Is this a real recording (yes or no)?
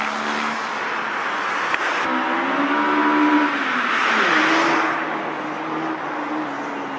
yes